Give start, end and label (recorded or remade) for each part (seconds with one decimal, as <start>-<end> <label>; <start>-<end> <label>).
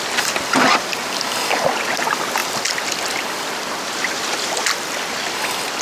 0.0-5.8 recorded